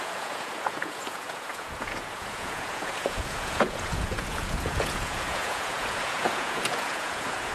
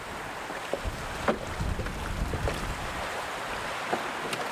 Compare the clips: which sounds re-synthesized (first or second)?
first